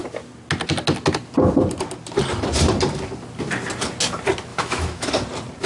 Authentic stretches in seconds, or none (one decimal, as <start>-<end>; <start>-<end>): 0.0-4.5; 5.1-5.7